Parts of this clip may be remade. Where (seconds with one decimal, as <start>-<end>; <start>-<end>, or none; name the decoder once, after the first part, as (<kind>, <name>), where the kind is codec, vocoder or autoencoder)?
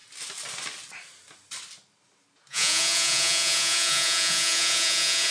2.5-5.3 (vocoder, Vocos)